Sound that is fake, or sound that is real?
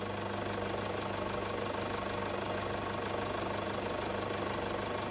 real